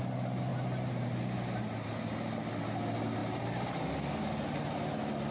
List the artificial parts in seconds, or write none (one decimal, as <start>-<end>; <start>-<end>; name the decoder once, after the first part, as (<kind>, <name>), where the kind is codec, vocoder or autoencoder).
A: none